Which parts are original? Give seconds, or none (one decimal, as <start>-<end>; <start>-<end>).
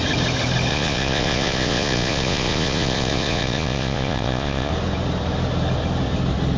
0.0-0.7; 4.7-6.6